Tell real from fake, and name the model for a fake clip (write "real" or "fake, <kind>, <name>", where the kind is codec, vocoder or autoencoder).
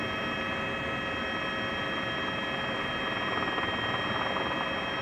real